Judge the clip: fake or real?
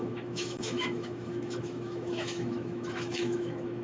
fake